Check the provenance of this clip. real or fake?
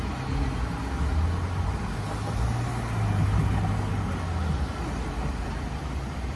real